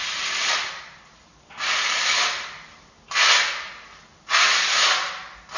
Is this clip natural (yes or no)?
yes